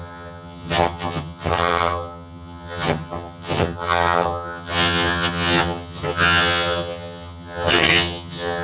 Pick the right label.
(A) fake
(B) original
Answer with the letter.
A